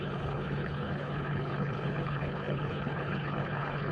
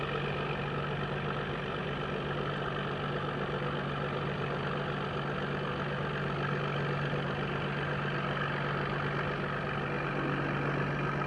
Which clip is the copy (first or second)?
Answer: first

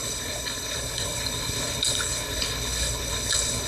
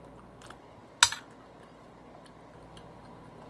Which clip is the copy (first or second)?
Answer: first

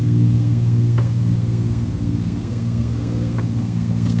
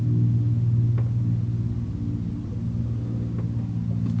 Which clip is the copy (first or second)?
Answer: first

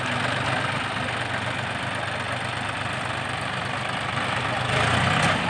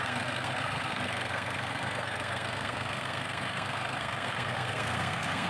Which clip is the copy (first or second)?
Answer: second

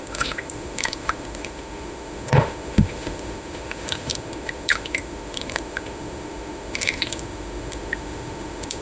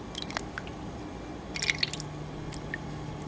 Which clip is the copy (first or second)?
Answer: first